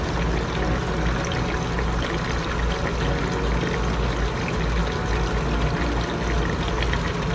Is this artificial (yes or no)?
no